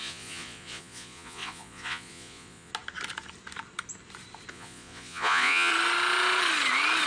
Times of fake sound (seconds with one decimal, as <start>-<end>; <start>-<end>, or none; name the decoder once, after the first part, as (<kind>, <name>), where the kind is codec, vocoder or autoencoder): 0.0-2.7 (vocoder, Vocos); 4.5-5.7